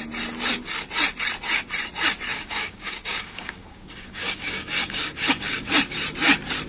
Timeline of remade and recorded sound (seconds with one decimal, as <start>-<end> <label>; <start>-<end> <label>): 0.0-2.3 recorded; 2.3-5.7 remade; 5.7-6.7 recorded

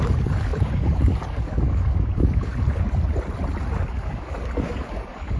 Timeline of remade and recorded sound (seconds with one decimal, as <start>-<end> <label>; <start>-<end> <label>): 0.0-2.5 remade; 2.5-3.8 recorded; 3.8-5.4 remade

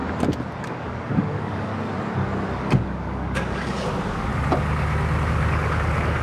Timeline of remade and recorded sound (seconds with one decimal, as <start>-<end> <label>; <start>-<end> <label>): 0.0-0.6 recorded; 0.6-1.7 remade; 1.7-2.6 recorded; 2.6-4.3 remade; 4.3-5.3 recorded; 5.3-6.2 remade

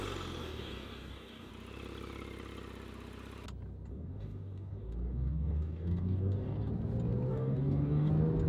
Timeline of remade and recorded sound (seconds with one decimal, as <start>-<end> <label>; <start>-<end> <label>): 0.0-0.4 recorded; 0.4-1.5 remade; 1.5-3.9 recorded; 3.9-6.7 remade; 6.7-7.3 recorded; 7.3-8.1 remade; 8.1-8.5 recorded